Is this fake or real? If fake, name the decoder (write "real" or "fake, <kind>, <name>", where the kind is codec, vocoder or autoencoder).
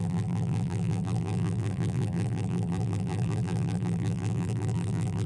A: fake, vocoder, BigVGAN v2